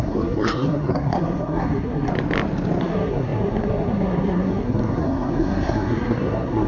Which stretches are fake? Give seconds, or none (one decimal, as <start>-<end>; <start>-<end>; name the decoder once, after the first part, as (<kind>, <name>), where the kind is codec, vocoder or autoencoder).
0.0-2.1 (codec, SNAC); 2.8-6.7